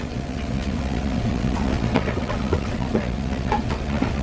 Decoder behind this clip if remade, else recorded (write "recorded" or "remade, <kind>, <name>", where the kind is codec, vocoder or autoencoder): remade, vocoder, WaveNeXt